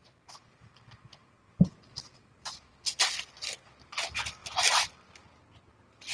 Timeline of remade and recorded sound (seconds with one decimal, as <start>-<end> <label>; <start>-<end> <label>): 0.0-3.1 remade; 3.1-4.4 recorded; 4.4-4.9 remade; 4.9-6.1 recorded